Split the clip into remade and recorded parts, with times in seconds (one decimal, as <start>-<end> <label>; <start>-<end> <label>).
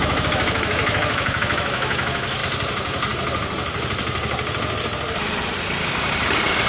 0.0-2.4 remade; 2.4-6.7 recorded